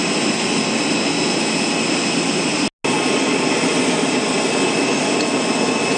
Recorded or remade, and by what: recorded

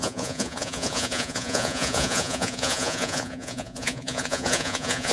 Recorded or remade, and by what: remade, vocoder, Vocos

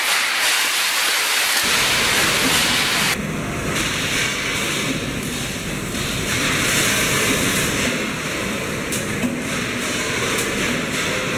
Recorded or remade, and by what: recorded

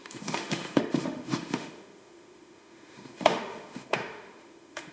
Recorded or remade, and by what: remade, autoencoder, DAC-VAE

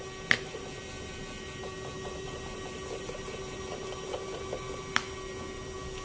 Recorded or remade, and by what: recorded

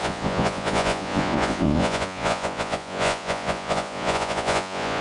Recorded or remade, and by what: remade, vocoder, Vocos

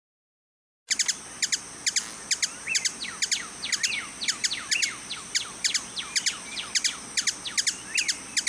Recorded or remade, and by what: recorded